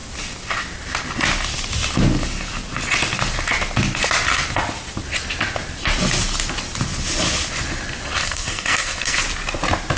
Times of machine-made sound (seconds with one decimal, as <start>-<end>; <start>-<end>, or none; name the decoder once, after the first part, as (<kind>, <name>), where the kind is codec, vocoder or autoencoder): 8.2-9.2 (codec, SNAC)